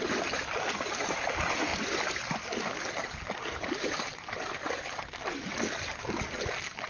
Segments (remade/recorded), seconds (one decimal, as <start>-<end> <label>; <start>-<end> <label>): 0.0-6.9 recorded